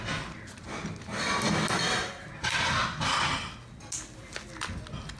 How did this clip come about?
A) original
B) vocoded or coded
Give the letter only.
A